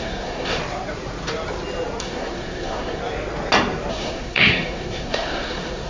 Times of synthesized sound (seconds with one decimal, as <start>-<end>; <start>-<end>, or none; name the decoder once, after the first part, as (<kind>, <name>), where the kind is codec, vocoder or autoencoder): 0.0-0.6 (codec, SNAC); 2.0-3.0; 3.9-5.9